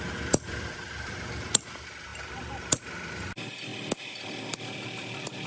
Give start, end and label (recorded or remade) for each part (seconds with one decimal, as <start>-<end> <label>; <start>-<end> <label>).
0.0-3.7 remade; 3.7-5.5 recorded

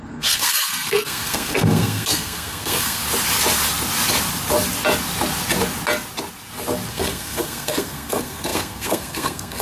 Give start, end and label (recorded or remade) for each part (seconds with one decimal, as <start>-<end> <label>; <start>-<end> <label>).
0.0-3.0 remade; 3.0-6.9 recorded; 6.9-9.6 remade

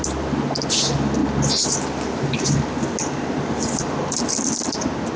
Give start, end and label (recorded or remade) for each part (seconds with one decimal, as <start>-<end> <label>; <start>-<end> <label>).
0.0-5.2 recorded